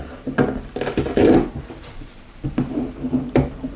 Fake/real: real